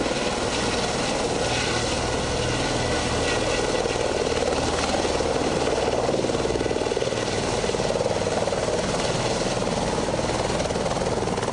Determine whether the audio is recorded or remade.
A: recorded